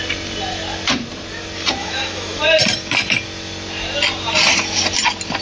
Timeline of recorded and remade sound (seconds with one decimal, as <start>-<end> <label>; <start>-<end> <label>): 0.0-1.8 recorded; 1.8-2.4 remade; 2.4-5.4 recorded